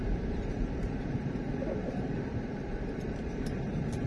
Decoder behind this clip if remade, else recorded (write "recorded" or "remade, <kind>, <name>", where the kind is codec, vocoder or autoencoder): remade, vocoder, BigVGAN v2